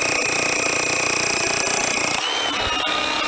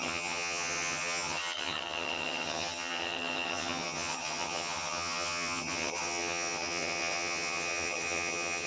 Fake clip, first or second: second